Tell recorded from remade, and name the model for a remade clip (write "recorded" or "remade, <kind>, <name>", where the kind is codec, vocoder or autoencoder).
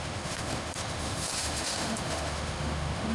remade, autoencoder, DAC-VAE